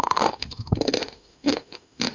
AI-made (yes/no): yes